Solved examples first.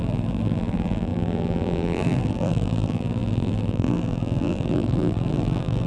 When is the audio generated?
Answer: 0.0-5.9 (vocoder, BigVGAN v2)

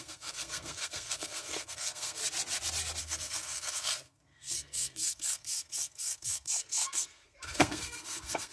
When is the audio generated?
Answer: 0.0-2.2 (codec, SNAC); 3.0-8.5

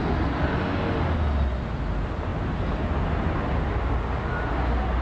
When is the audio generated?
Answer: none

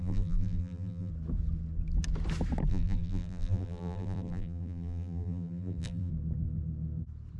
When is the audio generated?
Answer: 0.0-1.1 (vocoder, BigVGAN v2); 2.7-6.1

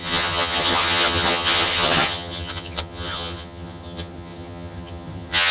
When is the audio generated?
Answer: 0.0-5.5 (vocoder, HiFi-GAN)

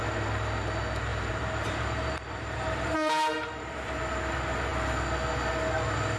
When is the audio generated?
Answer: 1.1-4.0 (vocoder, BigVGAN v2)